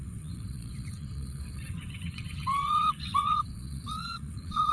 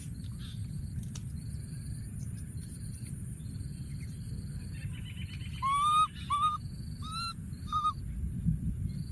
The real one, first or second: second